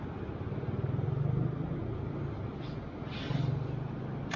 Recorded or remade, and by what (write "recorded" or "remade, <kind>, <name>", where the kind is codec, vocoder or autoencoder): recorded